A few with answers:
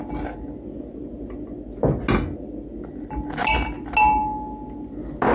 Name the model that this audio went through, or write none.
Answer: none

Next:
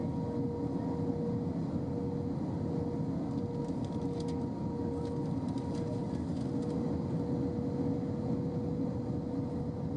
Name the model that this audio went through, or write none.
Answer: none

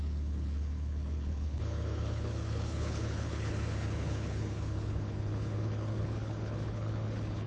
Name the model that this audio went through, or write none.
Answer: codec, HILCodec